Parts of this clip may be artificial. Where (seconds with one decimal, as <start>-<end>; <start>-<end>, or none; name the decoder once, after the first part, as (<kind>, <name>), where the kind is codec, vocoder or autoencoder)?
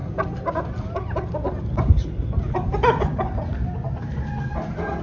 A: none